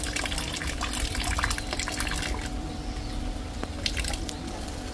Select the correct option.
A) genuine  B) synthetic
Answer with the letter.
A